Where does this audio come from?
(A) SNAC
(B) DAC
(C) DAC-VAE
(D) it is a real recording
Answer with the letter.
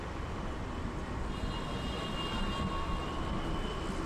D